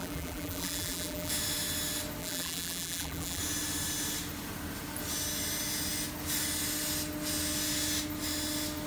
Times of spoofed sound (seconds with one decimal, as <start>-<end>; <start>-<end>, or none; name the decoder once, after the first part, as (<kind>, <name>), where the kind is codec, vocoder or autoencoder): 0.0-1.3 (vocoder, BigVGAN v2); 2.2-3.4